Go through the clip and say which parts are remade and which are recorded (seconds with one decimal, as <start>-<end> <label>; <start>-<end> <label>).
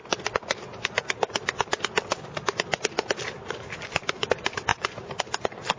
0.0-3.5 recorded; 3.5-5.8 remade